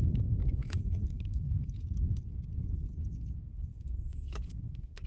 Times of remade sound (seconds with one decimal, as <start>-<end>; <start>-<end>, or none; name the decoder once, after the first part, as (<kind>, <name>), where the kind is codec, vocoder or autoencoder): 0.4-1.7 (codec, SNAC); 3.7-5.1